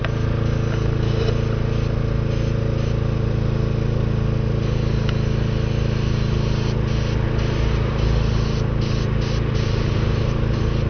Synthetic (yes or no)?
no